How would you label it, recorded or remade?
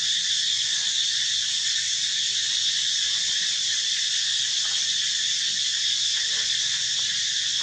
recorded